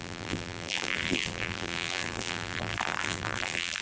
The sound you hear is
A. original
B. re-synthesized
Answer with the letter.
B